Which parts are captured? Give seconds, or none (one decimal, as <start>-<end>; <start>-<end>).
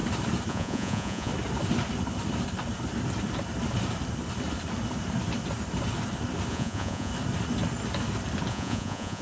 0.0-0.5; 1.3-6.5; 7.1-8.5